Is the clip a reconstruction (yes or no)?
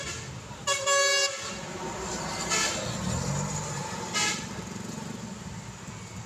no